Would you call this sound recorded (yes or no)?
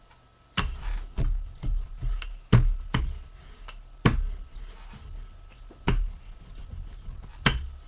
yes